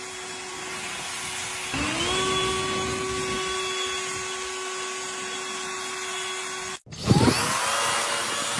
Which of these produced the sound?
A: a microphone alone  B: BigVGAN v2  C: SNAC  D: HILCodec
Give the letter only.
A